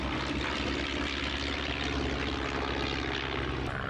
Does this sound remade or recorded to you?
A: recorded